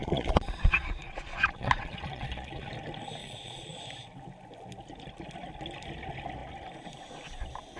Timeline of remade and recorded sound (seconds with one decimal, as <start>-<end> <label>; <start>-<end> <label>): 0.0-2.7 remade; 2.7-3.2 recorded; 3.2-3.8 remade; 3.8-7.8 recorded